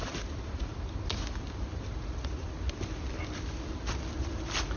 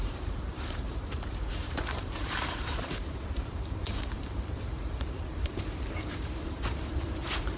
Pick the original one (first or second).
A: first